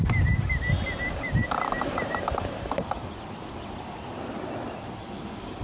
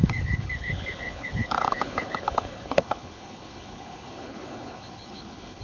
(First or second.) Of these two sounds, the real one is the first